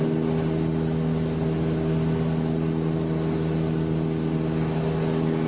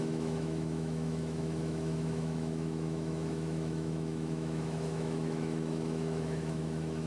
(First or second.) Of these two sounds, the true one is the first